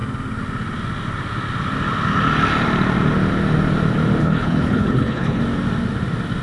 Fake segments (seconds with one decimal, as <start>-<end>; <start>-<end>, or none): 4.2-5.4